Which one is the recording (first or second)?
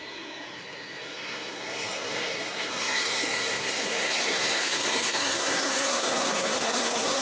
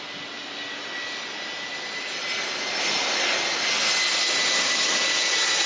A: second